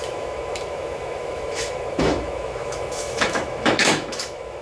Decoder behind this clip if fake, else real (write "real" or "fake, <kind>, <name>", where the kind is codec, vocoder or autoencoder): fake, autoencoder, DAC-VAE